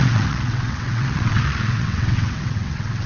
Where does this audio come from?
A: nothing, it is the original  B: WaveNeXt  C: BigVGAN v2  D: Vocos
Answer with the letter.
B